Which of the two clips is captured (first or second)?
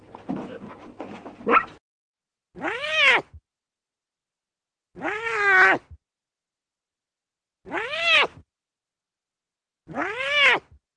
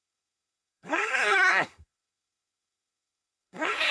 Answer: first